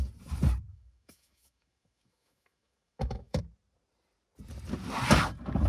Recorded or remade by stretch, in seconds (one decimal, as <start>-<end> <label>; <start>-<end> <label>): 0.0-0.7 recorded; 0.7-3.4 remade; 3.4-5.7 recorded

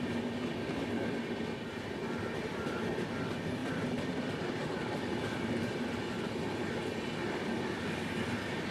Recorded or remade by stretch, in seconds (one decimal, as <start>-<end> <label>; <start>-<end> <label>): 0.0-8.7 recorded

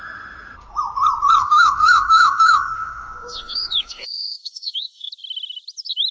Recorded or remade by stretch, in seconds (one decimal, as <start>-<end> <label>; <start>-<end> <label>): 0.0-1.4 recorded; 1.4-5.1 remade; 5.1-6.1 recorded

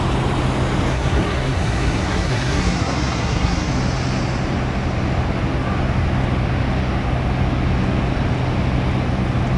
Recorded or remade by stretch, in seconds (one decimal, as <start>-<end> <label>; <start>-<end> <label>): 0.0-0.9 recorded; 0.9-3.7 remade; 3.7-9.6 recorded